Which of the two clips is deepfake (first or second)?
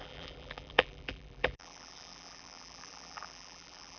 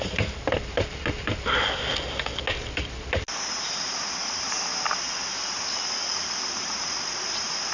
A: first